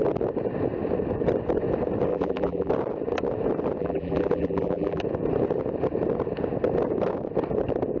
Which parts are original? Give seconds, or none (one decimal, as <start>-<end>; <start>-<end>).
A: 0.0-2.1; 2.7-3.8; 5.0-8.0